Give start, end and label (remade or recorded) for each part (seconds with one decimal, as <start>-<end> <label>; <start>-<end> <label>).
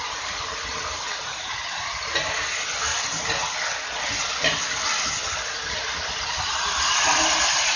0.0-7.8 recorded